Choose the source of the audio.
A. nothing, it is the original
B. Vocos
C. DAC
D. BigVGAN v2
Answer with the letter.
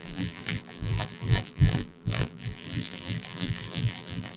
D